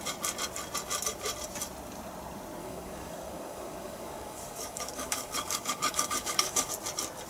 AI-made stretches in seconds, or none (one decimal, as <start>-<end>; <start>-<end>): 2.6-6.7